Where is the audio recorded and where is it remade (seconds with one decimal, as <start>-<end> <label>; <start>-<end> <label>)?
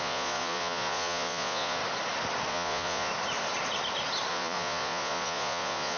0.0-1.8 remade; 1.8-2.5 recorded; 2.5-3.1 remade; 3.1-4.3 recorded; 4.3-6.0 remade